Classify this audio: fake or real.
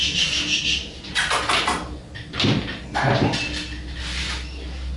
real